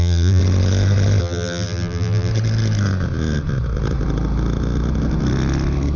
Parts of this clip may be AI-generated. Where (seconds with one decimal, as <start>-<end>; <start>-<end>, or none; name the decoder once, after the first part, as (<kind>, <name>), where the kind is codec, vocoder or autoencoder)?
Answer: 0.0-0.4 (vocoder, BigVGAN v2); 1.2-2.3